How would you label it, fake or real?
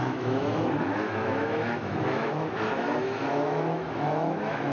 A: fake